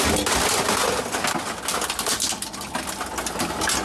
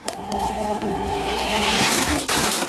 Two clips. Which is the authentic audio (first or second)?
first